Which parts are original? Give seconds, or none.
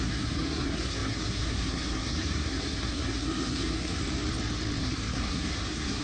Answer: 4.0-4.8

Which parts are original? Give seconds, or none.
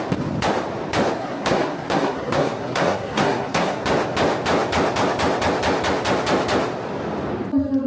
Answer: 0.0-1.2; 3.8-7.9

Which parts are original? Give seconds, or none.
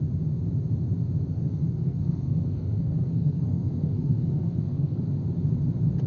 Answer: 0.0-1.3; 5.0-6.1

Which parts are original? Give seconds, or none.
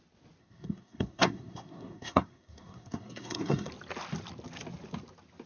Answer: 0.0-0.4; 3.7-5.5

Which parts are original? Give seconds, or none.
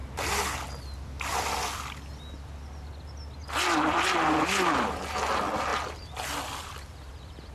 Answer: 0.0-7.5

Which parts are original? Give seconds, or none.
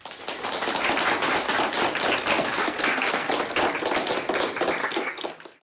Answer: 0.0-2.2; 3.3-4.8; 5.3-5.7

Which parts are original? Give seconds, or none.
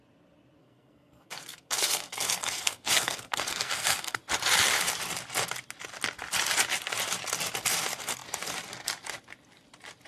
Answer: 0.0-0.6; 4.2-10.1